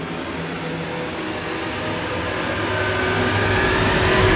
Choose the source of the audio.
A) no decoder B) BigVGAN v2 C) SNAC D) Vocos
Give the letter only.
A